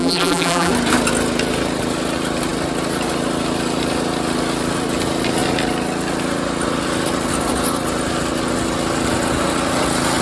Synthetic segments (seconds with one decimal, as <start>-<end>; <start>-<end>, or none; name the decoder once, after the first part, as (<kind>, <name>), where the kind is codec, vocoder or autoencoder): 0.0-0.7 (vocoder, BigVGAN v2)